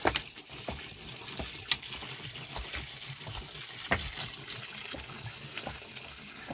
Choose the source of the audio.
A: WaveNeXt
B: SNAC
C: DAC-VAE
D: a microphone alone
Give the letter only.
D